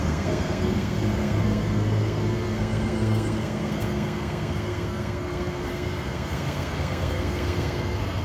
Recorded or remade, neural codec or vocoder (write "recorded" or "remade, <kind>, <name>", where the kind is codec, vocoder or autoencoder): remade, codec, SNAC